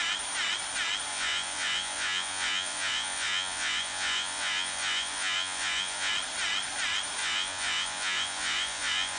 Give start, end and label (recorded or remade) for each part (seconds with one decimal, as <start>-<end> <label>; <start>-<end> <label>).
0.0-1.1 recorded; 1.1-6.1 remade; 6.1-7.2 recorded; 7.2-9.2 remade